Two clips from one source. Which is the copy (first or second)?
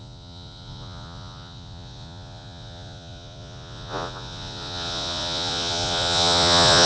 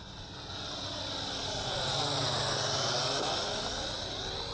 first